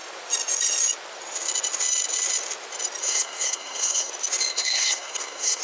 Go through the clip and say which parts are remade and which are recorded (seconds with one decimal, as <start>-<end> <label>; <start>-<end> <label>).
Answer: 0.0-3.0 recorded; 3.0-4.1 remade; 4.1-4.5 recorded; 4.5-5.6 remade